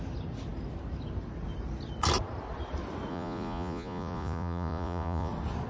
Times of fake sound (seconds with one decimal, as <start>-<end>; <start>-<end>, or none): 3.1-5.3